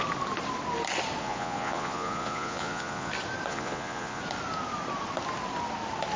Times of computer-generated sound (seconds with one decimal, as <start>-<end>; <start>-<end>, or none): 1.2-3.1; 3.5-4.2